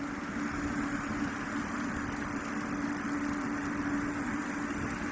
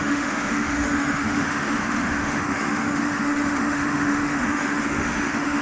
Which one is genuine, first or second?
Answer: first